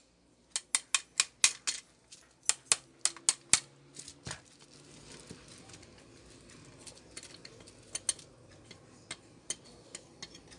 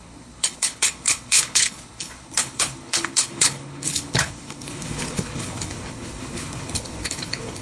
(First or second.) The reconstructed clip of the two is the second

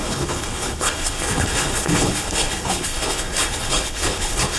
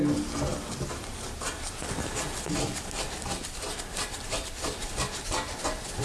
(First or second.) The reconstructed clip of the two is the first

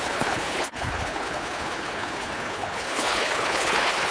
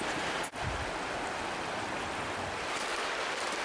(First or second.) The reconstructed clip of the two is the first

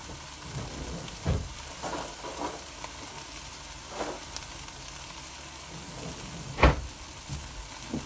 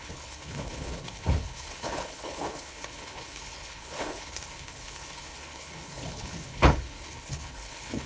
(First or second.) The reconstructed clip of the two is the second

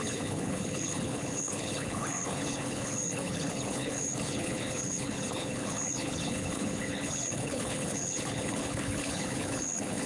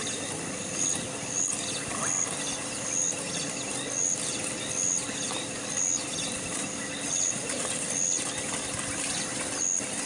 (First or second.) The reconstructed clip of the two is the first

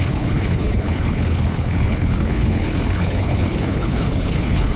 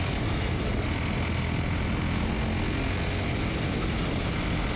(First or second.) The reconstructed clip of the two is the first